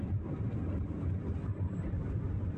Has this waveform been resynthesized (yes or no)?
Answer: no